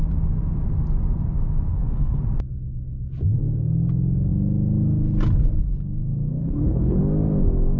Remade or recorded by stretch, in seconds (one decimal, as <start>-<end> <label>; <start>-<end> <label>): 0.0-1.7 recorded; 1.7-2.2 remade; 2.2-6.4 recorded; 6.4-7.0 remade; 7.0-7.8 recorded